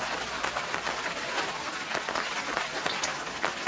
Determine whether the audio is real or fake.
real